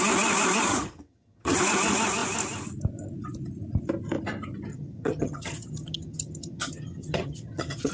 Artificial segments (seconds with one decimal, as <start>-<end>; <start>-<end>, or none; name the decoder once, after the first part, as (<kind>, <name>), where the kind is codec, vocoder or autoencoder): 0.7-1.6 (vocoder, HiFi-GAN); 4.7-7.9